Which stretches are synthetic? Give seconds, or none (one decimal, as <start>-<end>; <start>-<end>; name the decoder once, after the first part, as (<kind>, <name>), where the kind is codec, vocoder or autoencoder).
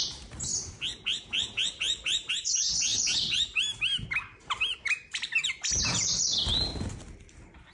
0.5-2.3 (vocoder, BigVGAN v2); 2.9-5.5